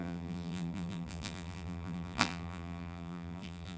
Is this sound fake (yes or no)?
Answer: yes